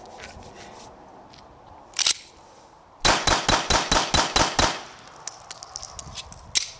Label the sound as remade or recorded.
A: recorded